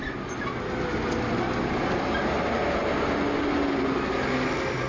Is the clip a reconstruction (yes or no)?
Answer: no